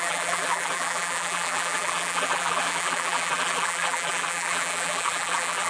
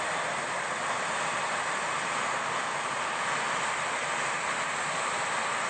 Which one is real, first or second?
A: second